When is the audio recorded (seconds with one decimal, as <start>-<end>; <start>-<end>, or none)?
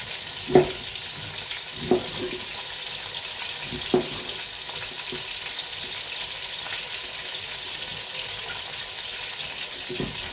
0.0-10.3